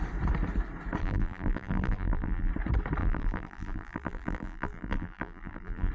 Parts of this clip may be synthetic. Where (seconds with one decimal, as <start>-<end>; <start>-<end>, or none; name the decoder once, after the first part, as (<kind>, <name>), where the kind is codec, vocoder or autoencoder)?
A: 1.0-2.5 (vocoder, BigVGAN v2); 3.0-5.9